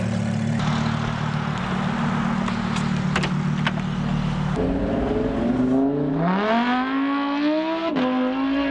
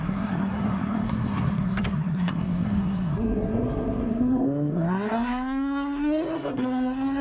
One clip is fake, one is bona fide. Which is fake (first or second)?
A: second